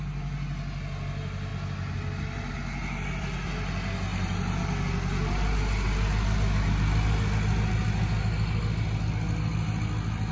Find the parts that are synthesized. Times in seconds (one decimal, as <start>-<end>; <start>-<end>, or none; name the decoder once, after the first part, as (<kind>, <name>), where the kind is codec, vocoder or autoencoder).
none